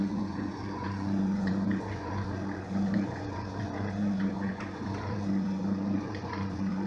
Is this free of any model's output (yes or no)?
no